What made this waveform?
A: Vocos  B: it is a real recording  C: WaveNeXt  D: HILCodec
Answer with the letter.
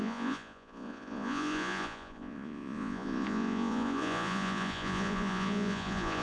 A